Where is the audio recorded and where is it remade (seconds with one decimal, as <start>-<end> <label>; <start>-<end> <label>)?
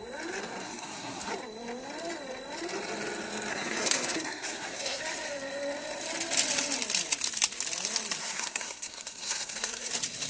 0.0-0.6 recorded; 0.6-1.3 remade; 1.3-3.5 recorded; 3.5-5.0 remade; 5.0-8.2 recorded; 8.2-9.9 remade; 9.9-10.3 recorded